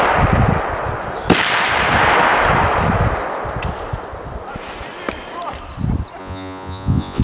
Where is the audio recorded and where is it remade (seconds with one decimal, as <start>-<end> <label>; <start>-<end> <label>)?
0.0-6.2 recorded; 6.2-7.2 remade